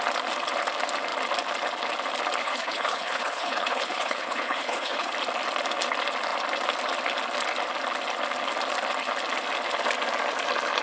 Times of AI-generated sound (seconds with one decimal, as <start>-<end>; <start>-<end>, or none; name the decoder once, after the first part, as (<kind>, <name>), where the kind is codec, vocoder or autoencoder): 2.4-5.1 (codec, HILCodec)